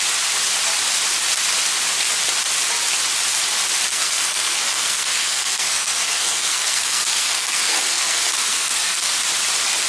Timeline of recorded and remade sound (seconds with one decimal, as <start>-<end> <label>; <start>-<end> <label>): 0.0-3.9 recorded; 3.9-9.1 remade; 9.1-9.9 recorded